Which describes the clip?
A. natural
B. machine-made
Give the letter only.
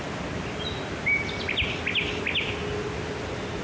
A